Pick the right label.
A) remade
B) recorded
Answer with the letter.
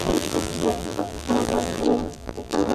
A